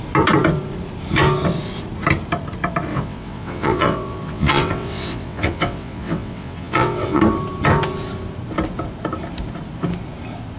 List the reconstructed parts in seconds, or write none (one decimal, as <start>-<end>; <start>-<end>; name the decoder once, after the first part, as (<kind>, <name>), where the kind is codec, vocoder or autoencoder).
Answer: 2.9-7.2 (vocoder, WaveNeXt)